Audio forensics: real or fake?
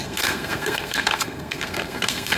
fake